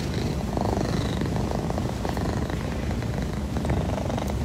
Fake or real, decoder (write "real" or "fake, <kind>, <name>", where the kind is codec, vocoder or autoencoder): fake, vocoder, BigVGAN v2